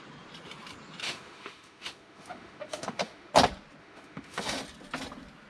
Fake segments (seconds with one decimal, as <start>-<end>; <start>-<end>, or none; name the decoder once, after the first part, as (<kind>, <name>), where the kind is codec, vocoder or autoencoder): 1.0-3.3 (autoencoder, DAC-VAE); 3.8-4.6